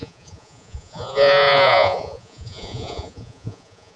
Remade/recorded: remade